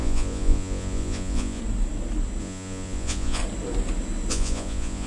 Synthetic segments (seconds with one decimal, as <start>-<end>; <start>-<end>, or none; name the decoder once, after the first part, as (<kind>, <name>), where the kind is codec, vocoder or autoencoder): 0.0-1.6 (vocoder, Vocos); 2.4-3.4; 4.3-5.1